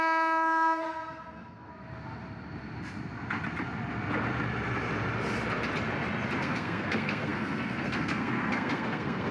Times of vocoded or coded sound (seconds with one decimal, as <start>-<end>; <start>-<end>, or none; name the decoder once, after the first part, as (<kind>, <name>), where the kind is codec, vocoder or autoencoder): 0.0-1.7 (codec, SNAC); 6.4-9.3